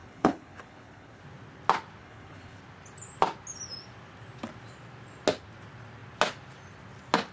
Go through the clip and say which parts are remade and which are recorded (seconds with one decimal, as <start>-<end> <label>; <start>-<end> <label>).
0.0-1.2 remade; 1.2-2.0 recorded; 2.0-2.6 remade; 2.6-7.3 recorded